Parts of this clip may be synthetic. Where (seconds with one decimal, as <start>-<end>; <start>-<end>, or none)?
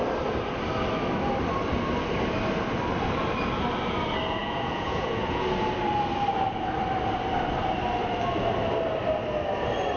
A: 4.4-5.4